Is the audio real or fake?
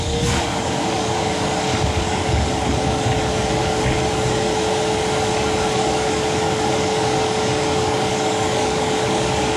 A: fake